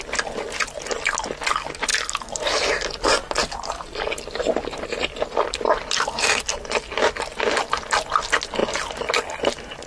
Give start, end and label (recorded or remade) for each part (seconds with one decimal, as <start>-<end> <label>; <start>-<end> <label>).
0.0-1.9 recorded; 1.9-6.7 remade; 6.7-9.9 recorded